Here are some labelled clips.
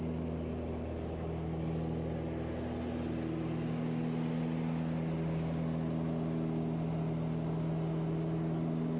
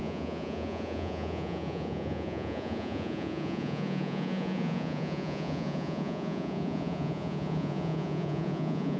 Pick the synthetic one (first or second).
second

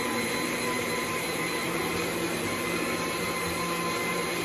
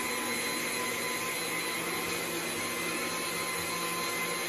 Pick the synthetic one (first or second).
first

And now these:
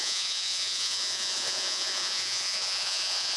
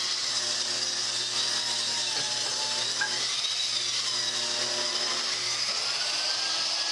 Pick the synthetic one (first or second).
first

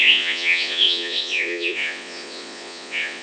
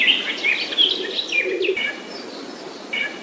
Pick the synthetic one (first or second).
first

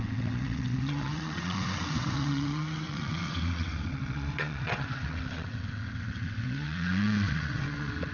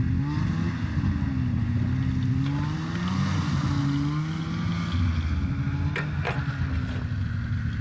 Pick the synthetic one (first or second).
first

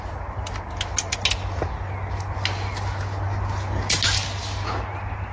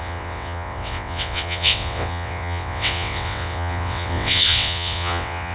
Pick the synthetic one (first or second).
second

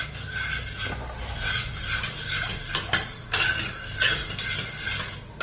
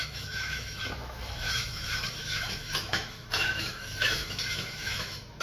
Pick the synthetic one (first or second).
second